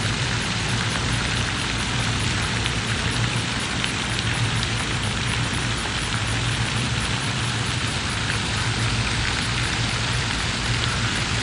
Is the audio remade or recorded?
remade